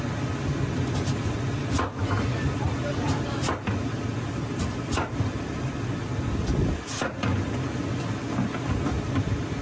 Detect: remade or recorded recorded